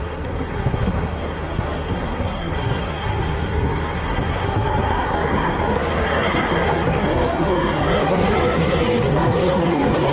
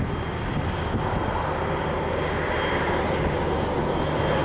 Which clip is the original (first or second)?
second